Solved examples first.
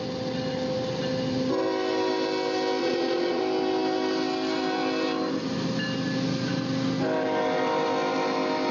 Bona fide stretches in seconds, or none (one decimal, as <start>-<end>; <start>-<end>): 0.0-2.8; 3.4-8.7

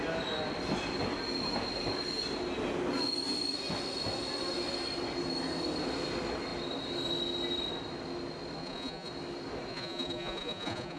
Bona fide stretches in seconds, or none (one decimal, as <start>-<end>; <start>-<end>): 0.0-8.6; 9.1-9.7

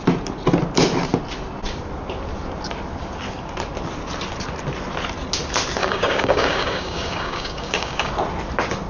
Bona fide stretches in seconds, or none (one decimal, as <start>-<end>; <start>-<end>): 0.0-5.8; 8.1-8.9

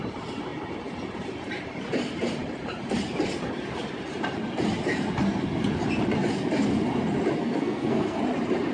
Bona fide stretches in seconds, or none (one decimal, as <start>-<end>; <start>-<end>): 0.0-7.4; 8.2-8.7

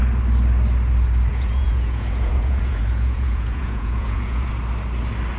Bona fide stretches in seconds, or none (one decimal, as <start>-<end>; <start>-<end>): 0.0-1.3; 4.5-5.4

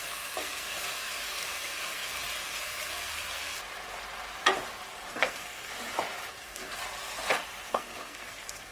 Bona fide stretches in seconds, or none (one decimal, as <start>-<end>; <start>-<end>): 3.6-5.1; 5.7-6.3; 6.8-7.7

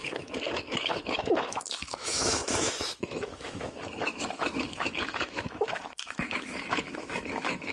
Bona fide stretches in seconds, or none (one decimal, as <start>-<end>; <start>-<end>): none

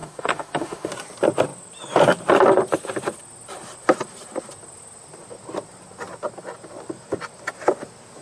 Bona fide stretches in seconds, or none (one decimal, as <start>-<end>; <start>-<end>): 0.9-8.2